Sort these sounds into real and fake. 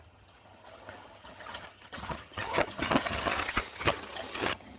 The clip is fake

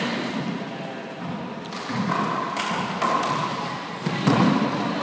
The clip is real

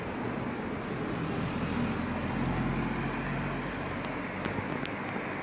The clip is real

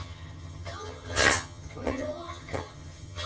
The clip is fake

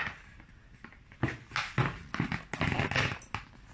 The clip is real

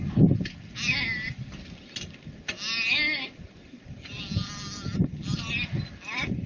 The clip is real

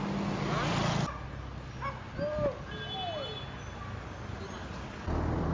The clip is real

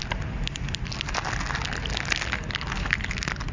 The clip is real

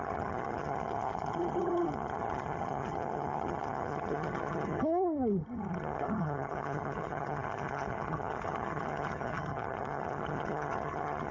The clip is fake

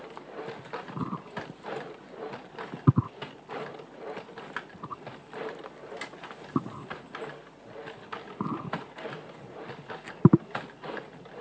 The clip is real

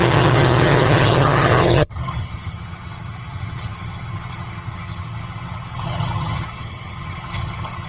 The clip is fake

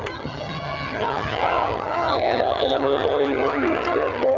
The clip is fake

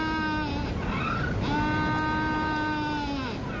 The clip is real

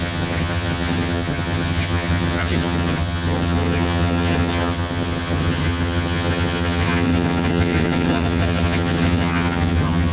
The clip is fake